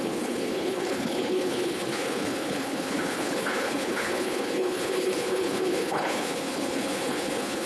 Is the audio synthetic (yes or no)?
yes